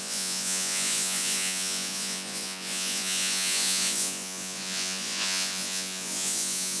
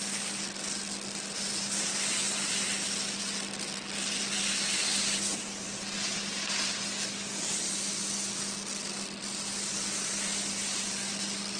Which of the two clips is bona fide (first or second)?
second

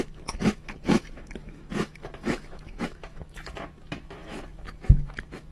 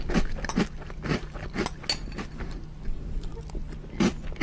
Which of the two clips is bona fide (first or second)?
second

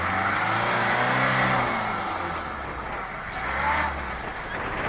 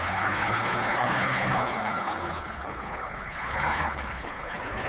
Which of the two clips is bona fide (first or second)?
first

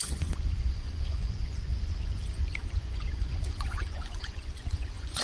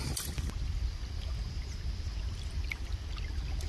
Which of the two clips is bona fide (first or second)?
second